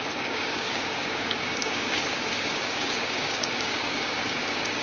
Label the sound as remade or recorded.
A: remade